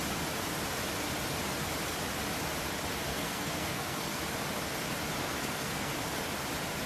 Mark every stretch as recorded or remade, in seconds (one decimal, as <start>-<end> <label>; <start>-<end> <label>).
0.0-3.1 recorded; 3.1-4.2 remade; 4.2-5.2 recorded; 5.2-5.9 remade; 5.9-6.9 recorded